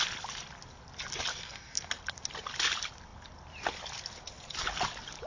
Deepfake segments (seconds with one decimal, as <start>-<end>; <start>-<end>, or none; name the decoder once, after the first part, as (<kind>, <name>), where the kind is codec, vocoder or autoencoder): 1.3-1.9 (codec, SNAC)